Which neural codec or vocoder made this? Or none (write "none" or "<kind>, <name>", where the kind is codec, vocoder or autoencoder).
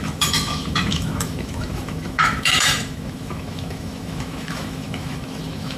autoencoder, DAC-VAE